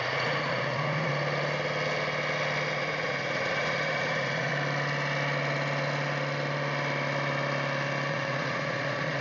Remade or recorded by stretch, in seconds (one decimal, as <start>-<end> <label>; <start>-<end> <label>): 0.0-1.1 remade; 1.1-2.7 recorded; 2.7-4.5 remade; 4.5-8.1 recorded; 8.1-9.2 remade